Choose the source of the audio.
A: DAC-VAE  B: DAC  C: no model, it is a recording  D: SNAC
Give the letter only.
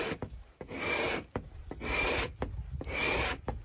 C